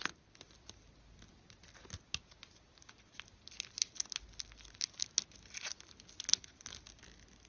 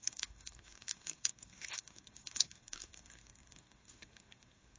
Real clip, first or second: first